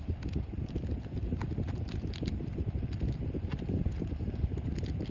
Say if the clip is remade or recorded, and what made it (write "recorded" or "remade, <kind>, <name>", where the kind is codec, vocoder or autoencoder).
recorded